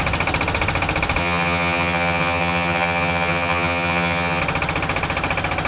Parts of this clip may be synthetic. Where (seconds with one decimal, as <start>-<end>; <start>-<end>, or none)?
1.2-4.4